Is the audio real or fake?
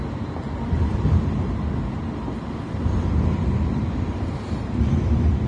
real